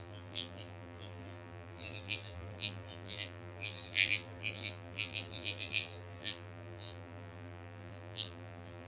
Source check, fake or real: fake